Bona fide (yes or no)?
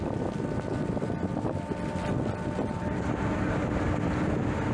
yes